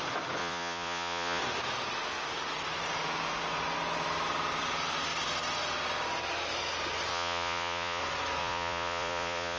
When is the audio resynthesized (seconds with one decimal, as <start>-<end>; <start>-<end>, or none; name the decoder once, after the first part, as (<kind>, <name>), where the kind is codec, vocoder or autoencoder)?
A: 0.4-1.4 (vocoder, Vocos); 7.1-8.0; 8.4-9.6